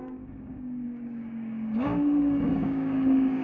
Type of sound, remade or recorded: remade